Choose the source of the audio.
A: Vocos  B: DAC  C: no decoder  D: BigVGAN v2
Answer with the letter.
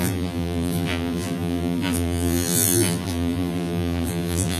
D